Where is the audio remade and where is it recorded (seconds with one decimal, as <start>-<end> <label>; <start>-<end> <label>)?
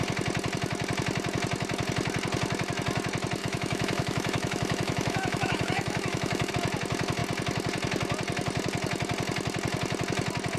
0.0-3.4 recorded; 3.4-6.5 remade; 6.5-10.6 recorded